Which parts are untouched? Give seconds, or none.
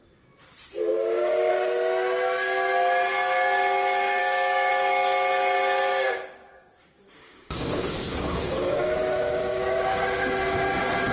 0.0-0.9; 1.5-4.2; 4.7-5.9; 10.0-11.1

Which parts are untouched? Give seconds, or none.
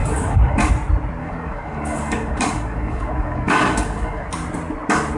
0.7-1.2; 4.3-5.2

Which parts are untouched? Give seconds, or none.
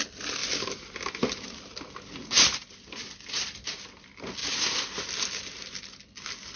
0.0-6.6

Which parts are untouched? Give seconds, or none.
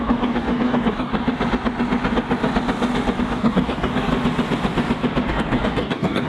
1.1-3.2; 4.1-5.3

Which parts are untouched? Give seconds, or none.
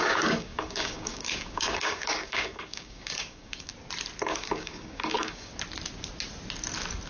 3.7-4.2; 5.5-7.1